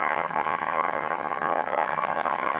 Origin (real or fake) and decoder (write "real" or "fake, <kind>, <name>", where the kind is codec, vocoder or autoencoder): fake, vocoder, HiFi-GAN